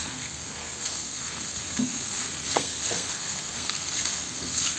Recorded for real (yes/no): no